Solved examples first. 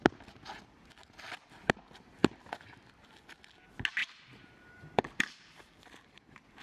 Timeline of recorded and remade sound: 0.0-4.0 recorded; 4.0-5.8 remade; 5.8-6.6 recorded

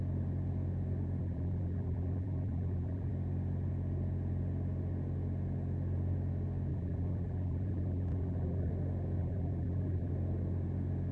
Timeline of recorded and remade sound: 0.0-1.2 recorded; 1.2-3.1 remade; 3.1-6.7 recorded; 6.7-8.7 remade; 8.7-9.2 recorded; 9.2-10.1 remade; 10.1-11.1 recorded

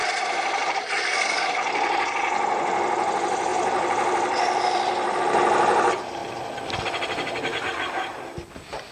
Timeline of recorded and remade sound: 0.0-0.8 remade; 0.8-3.5 recorded; 3.5-5.2 remade; 5.2-8.9 recorded

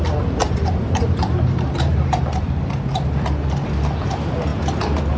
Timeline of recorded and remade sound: 0.0-0.4 recorded; 0.4-2.2 remade; 2.2-5.2 recorded